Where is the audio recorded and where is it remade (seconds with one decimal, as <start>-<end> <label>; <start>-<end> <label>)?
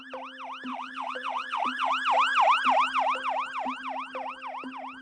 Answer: 0.0-0.7 recorded; 0.7-1.9 remade; 1.9-5.0 recorded